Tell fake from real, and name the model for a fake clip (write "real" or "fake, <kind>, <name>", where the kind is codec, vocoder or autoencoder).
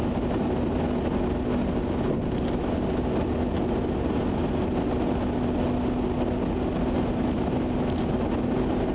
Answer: real